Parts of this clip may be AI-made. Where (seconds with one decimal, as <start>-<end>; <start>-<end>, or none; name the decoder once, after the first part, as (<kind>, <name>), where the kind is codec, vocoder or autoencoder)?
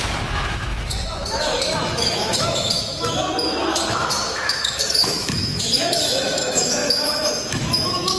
0.0-8.2 (autoencoder, DAC-VAE)